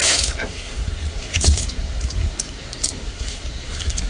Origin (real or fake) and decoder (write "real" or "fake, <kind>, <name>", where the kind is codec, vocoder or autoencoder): fake, codec, SNAC